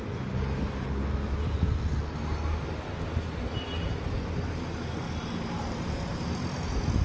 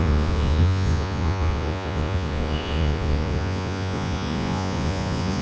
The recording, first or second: first